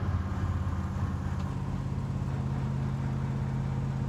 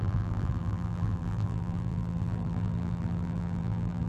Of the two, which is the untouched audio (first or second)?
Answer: first